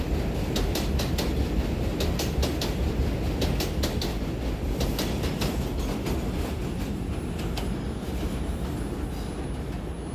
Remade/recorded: recorded